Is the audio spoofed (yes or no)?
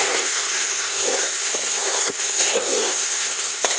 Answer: yes